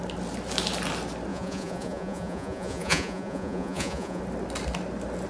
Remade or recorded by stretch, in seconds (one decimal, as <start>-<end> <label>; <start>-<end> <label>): 0.0-1.3 recorded; 1.3-4.2 remade; 4.2-5.3 recorded